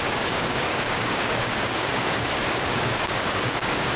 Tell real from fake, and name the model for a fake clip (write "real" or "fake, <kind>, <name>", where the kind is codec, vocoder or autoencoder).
fake, codec, DAC